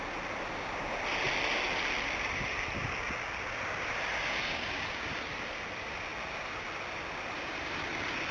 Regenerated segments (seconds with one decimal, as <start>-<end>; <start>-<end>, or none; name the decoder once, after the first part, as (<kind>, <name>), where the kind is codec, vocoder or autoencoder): none